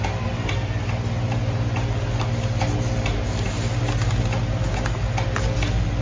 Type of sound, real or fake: real